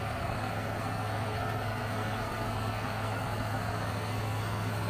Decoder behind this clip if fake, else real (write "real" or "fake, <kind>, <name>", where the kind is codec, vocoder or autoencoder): fake, codec, SNAC